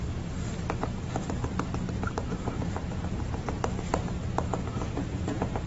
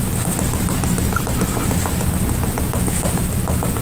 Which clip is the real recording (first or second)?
second